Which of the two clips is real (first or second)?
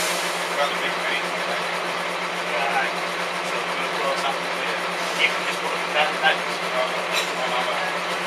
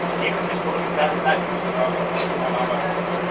first